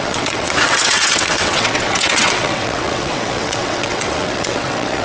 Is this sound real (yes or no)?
no